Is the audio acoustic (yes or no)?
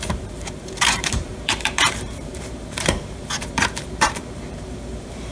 no